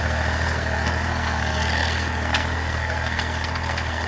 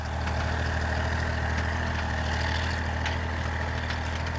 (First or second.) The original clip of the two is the second